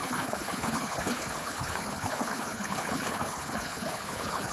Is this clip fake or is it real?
fake